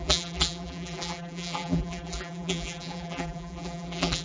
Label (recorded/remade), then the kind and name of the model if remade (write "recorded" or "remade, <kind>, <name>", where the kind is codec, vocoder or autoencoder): remade, vocoder, BigVGAN v2